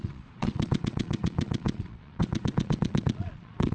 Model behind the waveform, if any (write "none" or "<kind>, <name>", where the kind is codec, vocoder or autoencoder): vocoder, Vocos